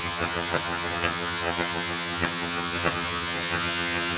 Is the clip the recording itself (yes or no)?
no